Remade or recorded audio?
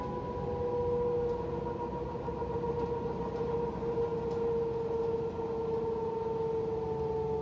recorded